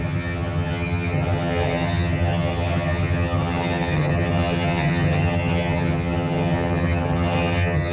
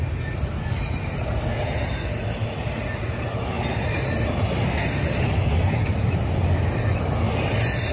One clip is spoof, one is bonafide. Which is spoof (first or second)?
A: first